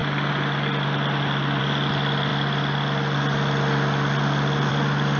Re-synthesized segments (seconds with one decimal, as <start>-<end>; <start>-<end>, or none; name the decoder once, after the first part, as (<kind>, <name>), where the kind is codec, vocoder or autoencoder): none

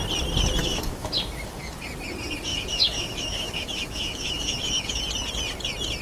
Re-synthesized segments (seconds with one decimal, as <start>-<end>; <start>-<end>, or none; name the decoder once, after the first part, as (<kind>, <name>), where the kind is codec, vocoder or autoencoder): 0.6-1.1 (autoencoder, DAC-VAE); 2.5-5.0

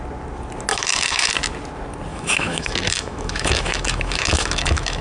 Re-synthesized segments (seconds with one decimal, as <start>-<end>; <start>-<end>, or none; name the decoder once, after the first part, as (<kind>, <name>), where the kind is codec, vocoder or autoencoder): 0.7-1.3 (autoencoder, DAC-VAE); 2.1-5.0

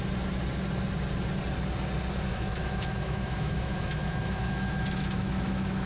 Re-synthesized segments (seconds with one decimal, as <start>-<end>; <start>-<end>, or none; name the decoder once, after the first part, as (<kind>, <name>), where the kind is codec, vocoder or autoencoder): 2.3-5.9 (autoencoder, DAC-VAE)